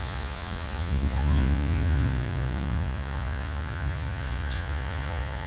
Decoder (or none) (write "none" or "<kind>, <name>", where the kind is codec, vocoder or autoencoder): vocoder, Vocos